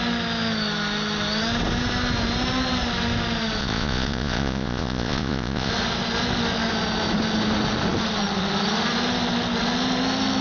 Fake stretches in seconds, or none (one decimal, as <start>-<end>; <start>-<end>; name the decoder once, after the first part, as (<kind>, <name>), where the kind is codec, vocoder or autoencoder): 3.6-5.7 (vocoder, Vocos)